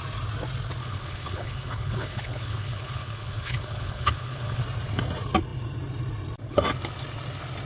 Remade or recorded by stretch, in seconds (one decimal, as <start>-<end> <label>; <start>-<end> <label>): 0.0-0.8 recorded; 0.8-4.6 remade; 4.6-7.7 recorded